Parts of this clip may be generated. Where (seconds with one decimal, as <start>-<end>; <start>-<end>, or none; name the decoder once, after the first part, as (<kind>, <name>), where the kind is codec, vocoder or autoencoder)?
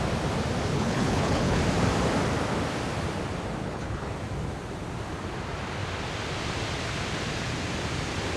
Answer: 0.7-1.6 (codec, HILCodec); 3.6-4.1